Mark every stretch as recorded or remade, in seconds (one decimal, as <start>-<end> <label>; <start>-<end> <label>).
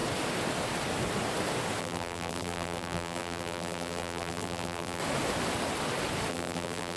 0.0-1.8 recorded; 1.8-5.0 remade; 5.0-6.3 recorded; 6.3-7.0 remade